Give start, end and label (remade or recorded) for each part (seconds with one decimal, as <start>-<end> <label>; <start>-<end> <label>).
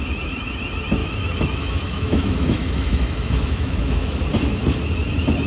0.0-1.0 recorded; 1.0-4.2 remade; 4.2-5.5 recorded